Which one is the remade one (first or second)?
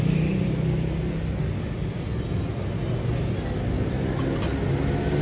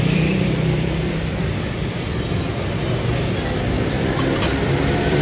second